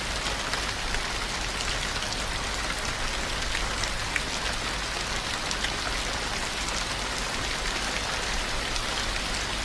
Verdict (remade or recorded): recorded